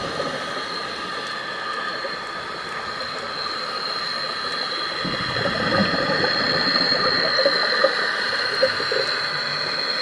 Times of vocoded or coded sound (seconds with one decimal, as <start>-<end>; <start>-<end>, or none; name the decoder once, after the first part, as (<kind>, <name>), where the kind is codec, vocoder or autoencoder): 5.8-7.0 (vocoder, BigVGAN v2); 7.8-8.5

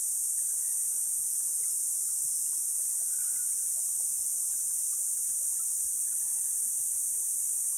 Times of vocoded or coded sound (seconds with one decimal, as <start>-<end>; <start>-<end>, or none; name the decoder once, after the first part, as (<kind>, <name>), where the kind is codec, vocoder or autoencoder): 6.9-7.8 (vocoder, BigVGAN v2)

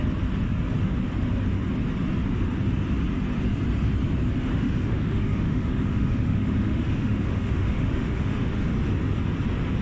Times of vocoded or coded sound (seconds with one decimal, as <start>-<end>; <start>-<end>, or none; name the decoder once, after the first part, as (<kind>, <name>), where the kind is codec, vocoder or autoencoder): 4.5-8.7 (autoencoder, DAC-VAE)

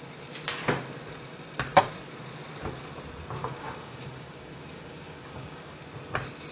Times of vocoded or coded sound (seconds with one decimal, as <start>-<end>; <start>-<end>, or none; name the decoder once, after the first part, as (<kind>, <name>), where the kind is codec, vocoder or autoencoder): 3.4-5.8 (codec, DAC)

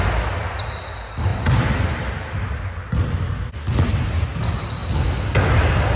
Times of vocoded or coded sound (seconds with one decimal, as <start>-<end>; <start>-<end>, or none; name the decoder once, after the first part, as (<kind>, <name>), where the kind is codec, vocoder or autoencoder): none

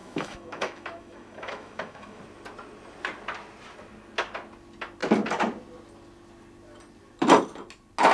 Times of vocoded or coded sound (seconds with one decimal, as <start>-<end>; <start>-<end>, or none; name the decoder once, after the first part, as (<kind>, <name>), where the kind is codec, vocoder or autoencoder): 0.0-2.2 (autoencoder, DAC-VAE)

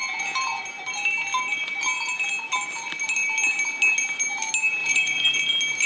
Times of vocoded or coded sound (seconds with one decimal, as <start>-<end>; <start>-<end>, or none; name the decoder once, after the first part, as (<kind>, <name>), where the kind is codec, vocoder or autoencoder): 0.0-0.6 (vocoder, Vocos); 4.8-5.4

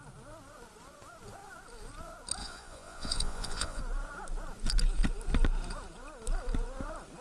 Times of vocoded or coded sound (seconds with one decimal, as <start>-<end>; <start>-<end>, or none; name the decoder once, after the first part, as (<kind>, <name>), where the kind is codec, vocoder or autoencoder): 2.4-3.8 (vocoder, Vocos)